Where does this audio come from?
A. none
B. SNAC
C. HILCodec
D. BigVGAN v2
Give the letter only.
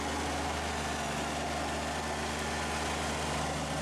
A